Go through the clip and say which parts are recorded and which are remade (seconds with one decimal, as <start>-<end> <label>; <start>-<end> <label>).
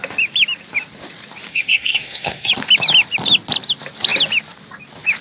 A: 0.0-1.5 recorded; 1.5-2.5 remade; 2.5-5.2 recorded